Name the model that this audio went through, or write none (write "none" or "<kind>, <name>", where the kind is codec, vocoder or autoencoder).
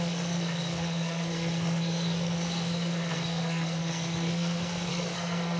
codec, SNAC